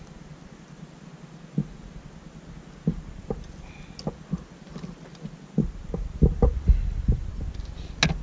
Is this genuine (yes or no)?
yes